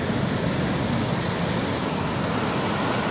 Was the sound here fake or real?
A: real